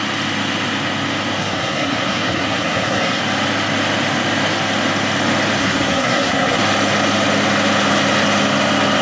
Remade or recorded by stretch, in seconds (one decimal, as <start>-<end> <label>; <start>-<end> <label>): 0.0-1.4 recorded; 1.4-3.2 remade; 3.2-5.6 recorded; 5.6-6.6 remade; 6.6-9.0 recorded